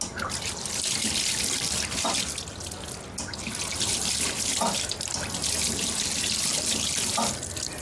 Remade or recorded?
recorded